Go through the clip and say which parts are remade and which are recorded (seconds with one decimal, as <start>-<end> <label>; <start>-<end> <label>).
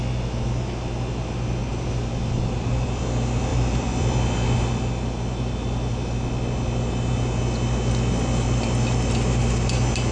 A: 0.0-1.6 recorded; 1.6-3.0 remade; 3.0-3.5 recorded; 3.5-4.9 remade; 4.9-10.1 recorded